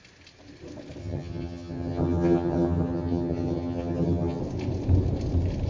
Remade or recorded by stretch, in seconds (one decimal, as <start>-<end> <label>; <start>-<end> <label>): 0.0-1.0 recorded; 1.0-4.4 remade; 4.4-5.7 recorded